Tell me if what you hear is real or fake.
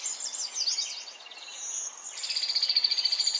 real